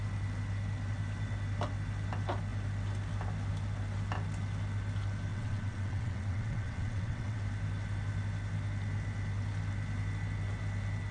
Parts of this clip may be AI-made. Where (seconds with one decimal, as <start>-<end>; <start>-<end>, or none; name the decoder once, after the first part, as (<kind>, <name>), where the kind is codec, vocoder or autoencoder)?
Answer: 5.3-7.4 (vocoder, WaveNeXt)